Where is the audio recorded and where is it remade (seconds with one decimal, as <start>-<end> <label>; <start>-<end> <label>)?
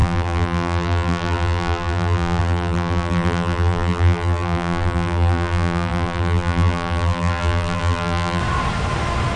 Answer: 0.0-8.4 remade; 8.4-9.4 recorded